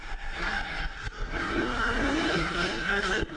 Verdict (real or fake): fake